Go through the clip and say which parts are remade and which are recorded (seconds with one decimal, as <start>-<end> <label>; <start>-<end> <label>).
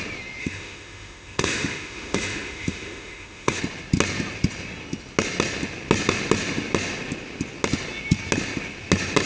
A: 0.0-0.4 recorded; 0.4-3.6 remade; 3.6-9.3 recorded